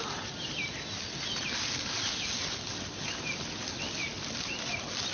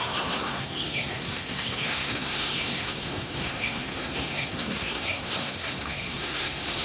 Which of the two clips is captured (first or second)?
first